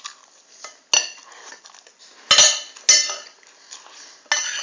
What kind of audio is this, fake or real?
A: real